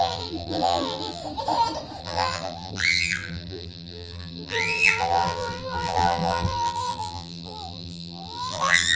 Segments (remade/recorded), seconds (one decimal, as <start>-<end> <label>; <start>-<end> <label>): 0.0-1.2 remade; 1.2-2.0 recorded; 2.0-9.0 remade